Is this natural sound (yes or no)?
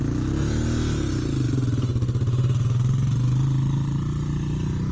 yes